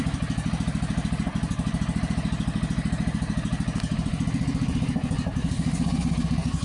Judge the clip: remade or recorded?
recorded